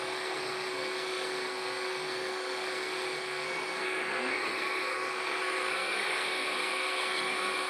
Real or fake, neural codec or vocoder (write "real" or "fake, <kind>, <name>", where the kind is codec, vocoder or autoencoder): fake, codec, SNAC